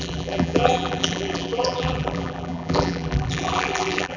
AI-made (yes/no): yes